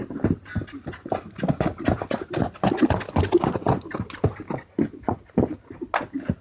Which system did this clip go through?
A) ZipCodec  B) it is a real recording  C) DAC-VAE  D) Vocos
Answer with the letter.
B